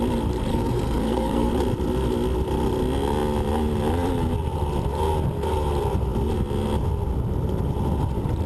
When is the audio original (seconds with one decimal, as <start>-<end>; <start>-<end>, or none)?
0.0-0.5; 1.5-8.5